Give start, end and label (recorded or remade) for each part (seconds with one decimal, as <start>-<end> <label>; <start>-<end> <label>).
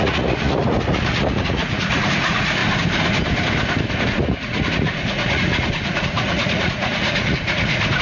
0.0-2.6 remade; 2.6-3.9 recorded; 3.9-8.0 remade